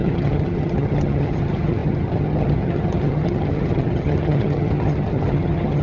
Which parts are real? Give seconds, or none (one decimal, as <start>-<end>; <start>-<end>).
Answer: none